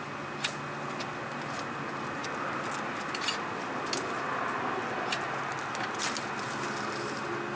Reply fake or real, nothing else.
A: real